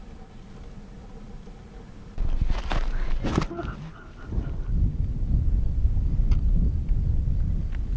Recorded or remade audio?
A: recorded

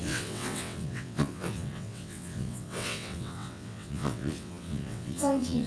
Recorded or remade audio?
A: remade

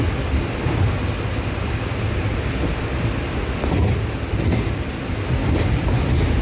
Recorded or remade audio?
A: recorded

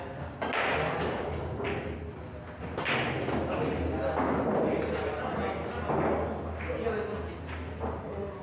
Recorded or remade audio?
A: recorded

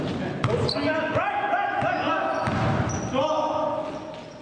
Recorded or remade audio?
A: recorded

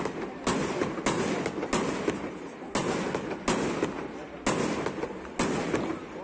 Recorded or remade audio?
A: recorded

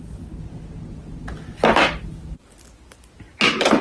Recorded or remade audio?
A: recorded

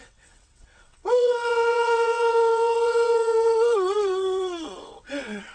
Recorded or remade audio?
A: remade